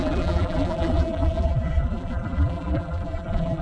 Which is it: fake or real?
fake